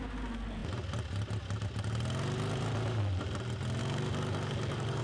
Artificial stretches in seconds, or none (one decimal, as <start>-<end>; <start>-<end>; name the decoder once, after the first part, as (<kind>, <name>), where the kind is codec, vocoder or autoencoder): 3.8-5.0 (codec, DAC)

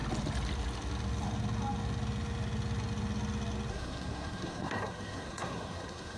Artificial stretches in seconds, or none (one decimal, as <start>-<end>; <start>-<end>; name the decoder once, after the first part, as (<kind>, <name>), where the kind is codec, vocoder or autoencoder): 3.7-6.2 (codec, SNAC)